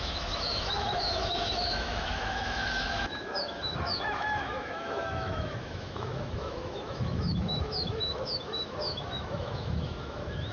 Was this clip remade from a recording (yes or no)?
yes